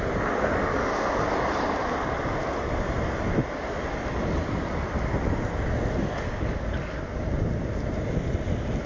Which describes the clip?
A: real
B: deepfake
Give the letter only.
A